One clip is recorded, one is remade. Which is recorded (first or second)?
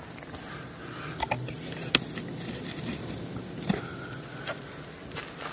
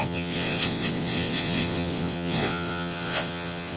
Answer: first